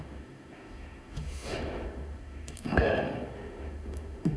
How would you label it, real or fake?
fake